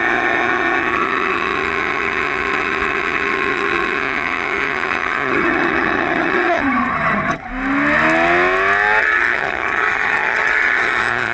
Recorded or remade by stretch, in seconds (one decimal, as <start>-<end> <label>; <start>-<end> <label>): 0.0-7.5 remade; 7.5-9.0 recorded; 9.0-11.3 remade